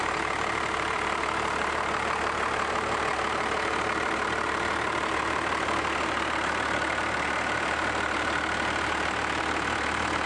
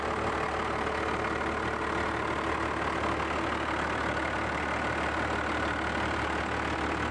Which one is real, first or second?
second